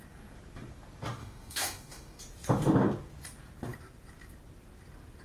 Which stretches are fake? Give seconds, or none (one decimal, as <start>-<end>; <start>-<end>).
1.2-2.2